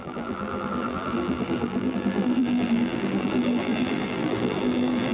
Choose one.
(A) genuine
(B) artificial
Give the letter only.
B